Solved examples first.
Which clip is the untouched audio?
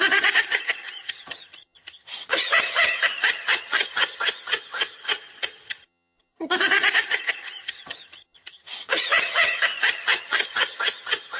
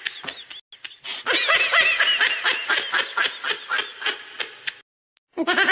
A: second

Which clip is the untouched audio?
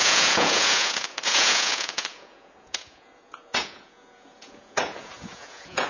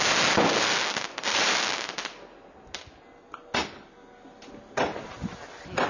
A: second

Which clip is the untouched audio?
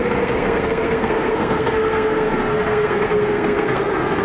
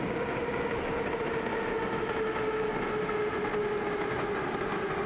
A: second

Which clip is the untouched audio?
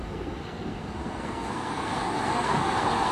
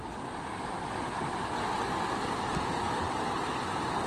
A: second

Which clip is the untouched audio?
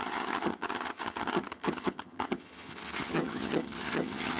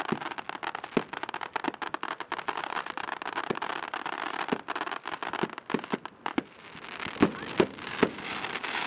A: second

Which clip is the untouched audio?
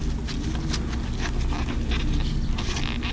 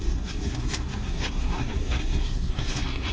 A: first